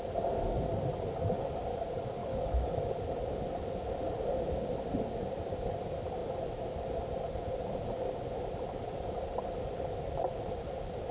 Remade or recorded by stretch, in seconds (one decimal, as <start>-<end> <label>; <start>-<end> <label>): 0.0-2.2 recorded; 2.2-2.9 remade; 2.9-11.1 recorded